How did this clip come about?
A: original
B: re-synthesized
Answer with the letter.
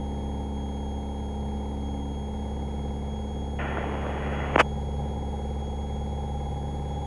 A